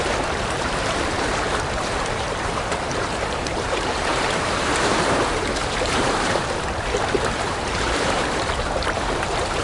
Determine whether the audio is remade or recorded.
remade